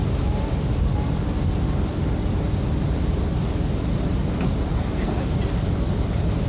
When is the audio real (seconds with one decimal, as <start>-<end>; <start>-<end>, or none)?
0.0-4.7; 5.2-6.5